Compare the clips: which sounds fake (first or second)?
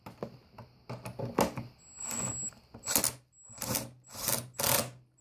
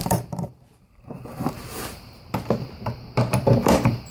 second